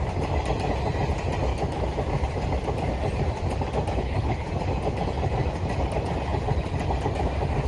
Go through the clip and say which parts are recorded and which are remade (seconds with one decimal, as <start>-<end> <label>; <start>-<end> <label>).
0.0-4.0 recorded; 4.0-4.5 remade; 4.5-7.7 recorded